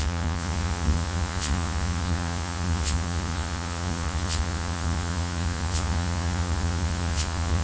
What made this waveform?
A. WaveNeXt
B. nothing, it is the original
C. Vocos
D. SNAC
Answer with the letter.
C